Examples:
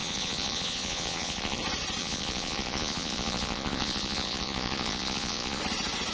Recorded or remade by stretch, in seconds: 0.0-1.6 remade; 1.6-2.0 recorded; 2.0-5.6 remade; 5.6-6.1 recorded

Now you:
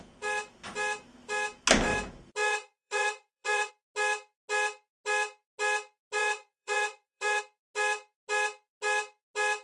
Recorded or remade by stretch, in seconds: 0.0-2.4 recorded; 2.4-3.7 remade; 3.7-6.2 recorded; 6.2-7.4 remade; 7.4-9.6 recorded

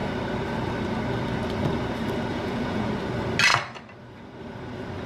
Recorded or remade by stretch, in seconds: 0.0-2.3 recorded; 2.3-2.9 remade; 2.9-5.1 recorded

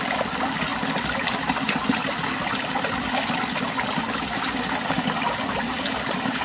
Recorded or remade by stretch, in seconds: 0.0-6.4 recorded

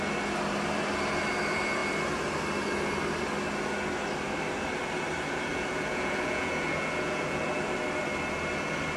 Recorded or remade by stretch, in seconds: 0.0-5.5 recorded; 5.5-7.6 remade; 7.6-9.0 recorded

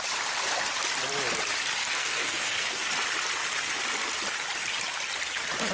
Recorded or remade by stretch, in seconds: 0.0-1.8 recorded; 1.8-2.9 remade; 2.9-5.7 recorded

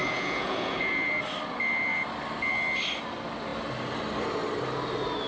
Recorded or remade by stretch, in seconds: 0.0-0.9 remade; 0.9-5.3 recorded